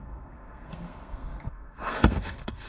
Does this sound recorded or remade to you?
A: remade